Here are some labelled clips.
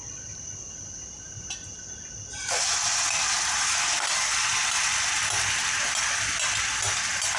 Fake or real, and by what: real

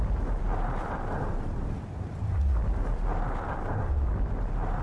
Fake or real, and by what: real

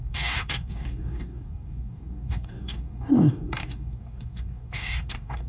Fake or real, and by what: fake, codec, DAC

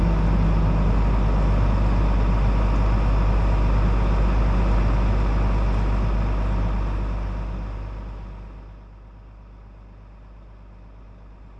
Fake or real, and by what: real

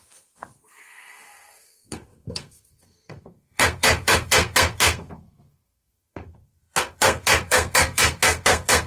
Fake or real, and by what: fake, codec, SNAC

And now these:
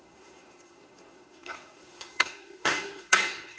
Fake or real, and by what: fake, codec, SNAC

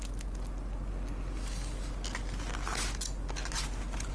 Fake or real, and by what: real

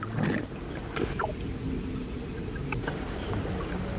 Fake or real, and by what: real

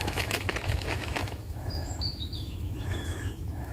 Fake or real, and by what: fake, autoencoder, DAC-VAE